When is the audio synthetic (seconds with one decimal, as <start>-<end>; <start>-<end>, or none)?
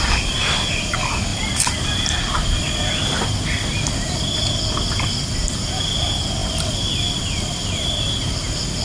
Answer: 1.3-2.7; 6.4-7.9